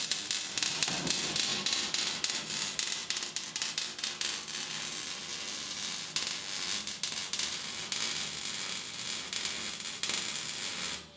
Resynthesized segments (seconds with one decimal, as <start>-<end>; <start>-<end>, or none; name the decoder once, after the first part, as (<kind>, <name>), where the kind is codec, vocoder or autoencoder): 3.0-4.7 (vocoder, BigVGAN v2); 5.3-5.9